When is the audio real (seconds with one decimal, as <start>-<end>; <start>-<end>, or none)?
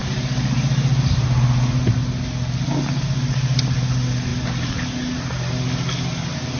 0.0-6.6